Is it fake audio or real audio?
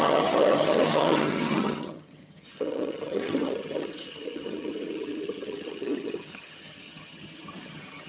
fake